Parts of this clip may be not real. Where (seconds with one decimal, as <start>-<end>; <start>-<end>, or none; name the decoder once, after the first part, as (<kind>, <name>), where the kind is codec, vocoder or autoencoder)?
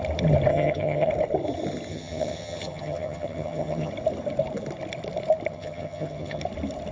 0.5-1.1 (vocoder, HiFi-GAN); 1.9-3.9; 5.5-6.4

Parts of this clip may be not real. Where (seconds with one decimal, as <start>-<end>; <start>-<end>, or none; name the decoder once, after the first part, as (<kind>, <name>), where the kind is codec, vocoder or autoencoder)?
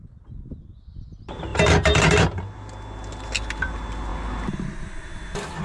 none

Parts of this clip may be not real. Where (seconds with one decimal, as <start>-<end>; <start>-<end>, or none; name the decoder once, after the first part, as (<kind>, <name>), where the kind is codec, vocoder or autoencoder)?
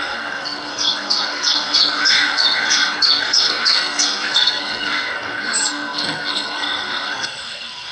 0.0-7.9 (codec, SNAC)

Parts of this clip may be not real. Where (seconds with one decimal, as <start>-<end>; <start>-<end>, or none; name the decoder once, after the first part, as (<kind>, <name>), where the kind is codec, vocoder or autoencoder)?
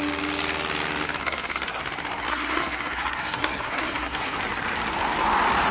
1.2-1.8 (codec, SNAC); 2.3-4.4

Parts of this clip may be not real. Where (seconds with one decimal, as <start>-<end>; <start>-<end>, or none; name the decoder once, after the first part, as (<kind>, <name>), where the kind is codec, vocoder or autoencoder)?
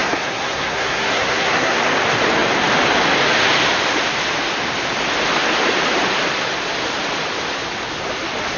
0.0-1.8 (codec, SNAC)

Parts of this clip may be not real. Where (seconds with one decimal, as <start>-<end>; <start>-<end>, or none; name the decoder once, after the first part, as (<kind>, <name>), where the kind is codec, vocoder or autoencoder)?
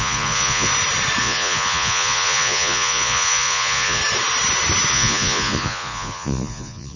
0.0-0.7 (vocoder, Vocos); 1.2-4.0; 4.9-7.0